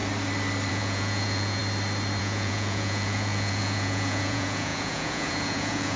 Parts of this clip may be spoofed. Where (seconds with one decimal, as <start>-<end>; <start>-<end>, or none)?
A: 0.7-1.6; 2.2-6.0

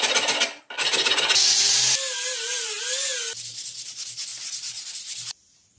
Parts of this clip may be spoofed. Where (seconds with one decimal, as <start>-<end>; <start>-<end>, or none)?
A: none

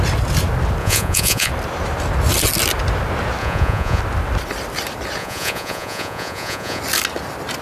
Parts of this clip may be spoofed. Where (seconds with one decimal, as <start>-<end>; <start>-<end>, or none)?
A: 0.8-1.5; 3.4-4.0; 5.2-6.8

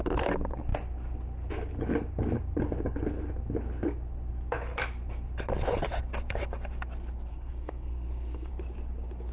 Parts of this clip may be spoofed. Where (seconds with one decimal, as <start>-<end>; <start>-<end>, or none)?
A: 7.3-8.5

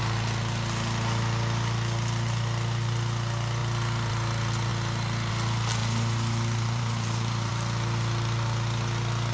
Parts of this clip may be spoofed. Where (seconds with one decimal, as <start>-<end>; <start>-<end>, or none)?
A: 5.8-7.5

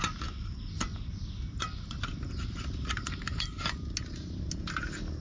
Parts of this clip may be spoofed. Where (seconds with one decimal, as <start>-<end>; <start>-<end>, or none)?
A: none

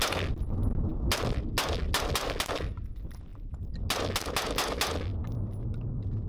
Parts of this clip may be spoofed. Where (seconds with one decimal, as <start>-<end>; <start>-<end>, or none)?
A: none